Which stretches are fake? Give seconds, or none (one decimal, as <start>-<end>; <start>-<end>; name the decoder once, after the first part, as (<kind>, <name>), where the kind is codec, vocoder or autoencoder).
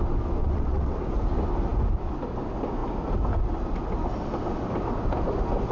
0.4-1.0 (vocoder, WaveNeXt)